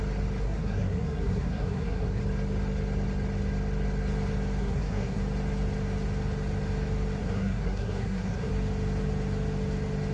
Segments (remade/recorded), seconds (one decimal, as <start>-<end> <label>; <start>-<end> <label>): 0.0-0.4 recorded; 0.4-2.2 remade; 2.2-4.6 recorded; 4.6-5.2 remade; 5.2-7.2 recorded; 7.2-8.5 remade; 8.5-10.1 recorded